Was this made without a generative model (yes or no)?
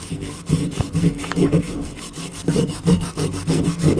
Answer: no